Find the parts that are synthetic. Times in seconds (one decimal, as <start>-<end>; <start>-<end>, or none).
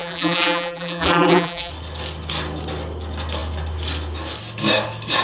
0.0-1.7